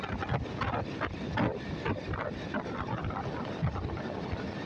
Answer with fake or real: real